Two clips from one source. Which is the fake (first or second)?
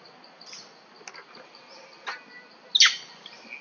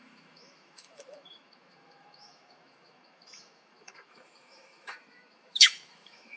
second